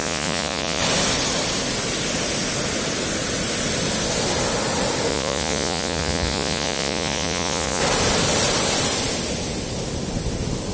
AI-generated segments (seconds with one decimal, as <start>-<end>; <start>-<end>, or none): 0.0-0.8; 5.1-7.8